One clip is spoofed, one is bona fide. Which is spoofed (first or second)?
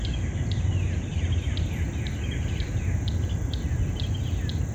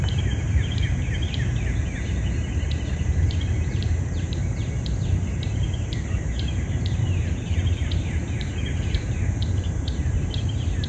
second